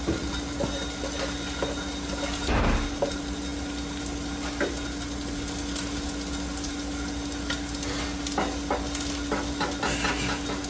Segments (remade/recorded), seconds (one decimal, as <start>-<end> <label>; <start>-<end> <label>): 0.0-10.7 recorded